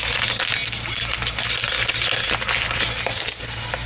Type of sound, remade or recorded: recorded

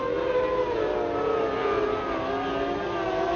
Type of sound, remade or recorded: recorded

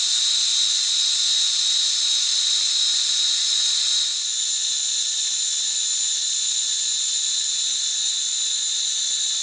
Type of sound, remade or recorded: recorded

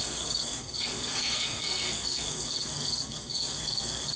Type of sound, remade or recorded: remade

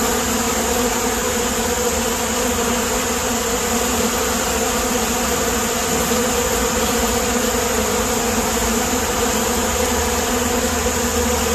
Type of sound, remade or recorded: recorded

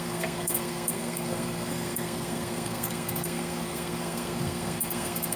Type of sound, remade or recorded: remade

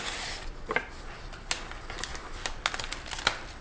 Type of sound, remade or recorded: recorded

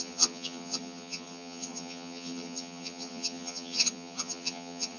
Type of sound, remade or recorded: remade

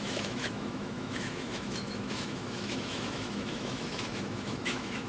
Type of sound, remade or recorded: remade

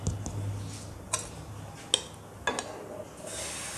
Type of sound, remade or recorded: recorded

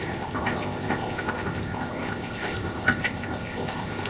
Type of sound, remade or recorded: remade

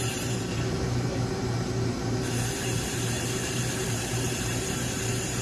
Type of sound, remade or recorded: remade